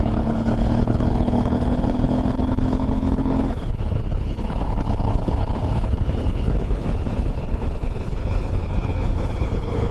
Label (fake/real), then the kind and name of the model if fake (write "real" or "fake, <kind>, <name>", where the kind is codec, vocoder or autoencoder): fake, codec, HILCodec